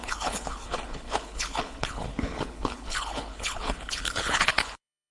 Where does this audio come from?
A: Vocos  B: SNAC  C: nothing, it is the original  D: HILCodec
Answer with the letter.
D